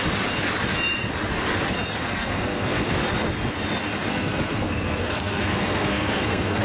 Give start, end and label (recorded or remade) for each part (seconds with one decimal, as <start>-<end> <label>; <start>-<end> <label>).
0.0-2.0 recorded; 2.0-2.9 remade; 2.9-4.1 recorded; 4.1-6.6 remade